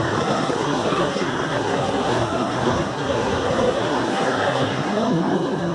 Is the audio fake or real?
fake